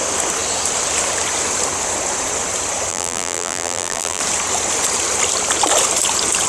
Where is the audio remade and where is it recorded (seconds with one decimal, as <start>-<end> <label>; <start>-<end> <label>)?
0.0-2.9 recorded; 2.9-4.2 remade; 4.2-6.5 recorded